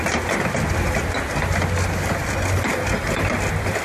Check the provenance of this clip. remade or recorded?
recorded